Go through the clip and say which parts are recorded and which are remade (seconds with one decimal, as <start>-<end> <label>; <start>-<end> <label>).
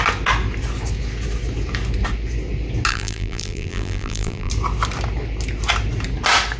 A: 0.0-2.9 recorded; 2.9-4.5 remade; 4.5-6.6 recorded